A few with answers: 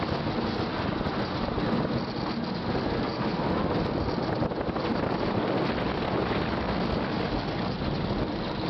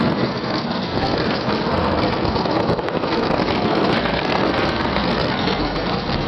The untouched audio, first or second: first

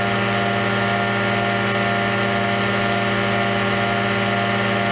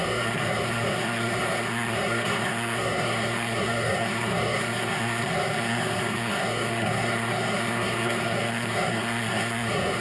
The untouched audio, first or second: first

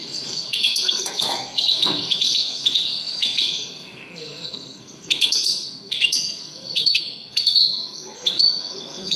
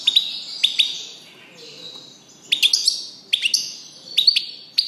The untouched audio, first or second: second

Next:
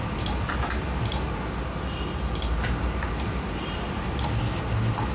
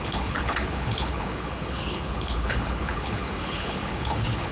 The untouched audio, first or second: first